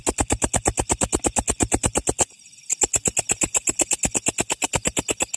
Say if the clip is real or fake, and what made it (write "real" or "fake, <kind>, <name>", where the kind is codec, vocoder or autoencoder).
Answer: real